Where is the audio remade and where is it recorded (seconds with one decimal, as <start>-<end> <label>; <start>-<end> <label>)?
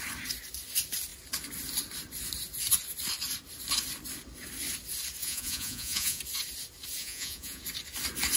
0.0-5.2 recorded; 5.2-6.2 remade; 6.2-7.0 recorded; 7.0-7.6 remade; 7.6-8.4 recorded